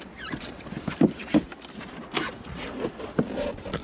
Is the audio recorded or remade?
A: recorded